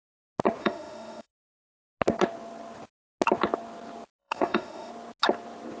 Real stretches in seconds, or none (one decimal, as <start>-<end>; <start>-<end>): 0.0-0.6; 1.3-4.2; 4.9-5.8